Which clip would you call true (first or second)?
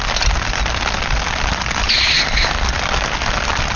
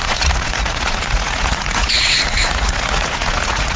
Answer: first